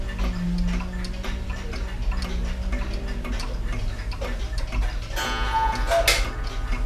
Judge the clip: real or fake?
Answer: real